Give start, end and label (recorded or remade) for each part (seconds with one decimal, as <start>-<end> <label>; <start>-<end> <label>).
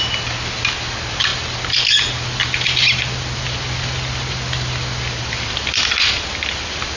0.0-7.0 recorded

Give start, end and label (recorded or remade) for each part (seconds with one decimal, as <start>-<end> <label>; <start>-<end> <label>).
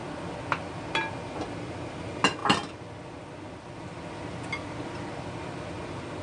0.0-6.2 recorded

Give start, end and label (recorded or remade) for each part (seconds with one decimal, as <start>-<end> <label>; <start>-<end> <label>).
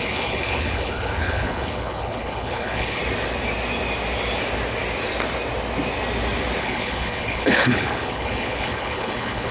0.0-3.0 remade; 3.0-6.6 recorded; 6.6-9.5 remade